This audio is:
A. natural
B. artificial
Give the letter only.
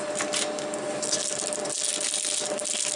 A